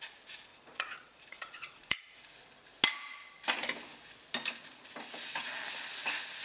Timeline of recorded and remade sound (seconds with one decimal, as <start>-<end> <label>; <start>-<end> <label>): 0.0-0.5 recorded; 0.5-2.0 remade; 2.0-6.4 recorded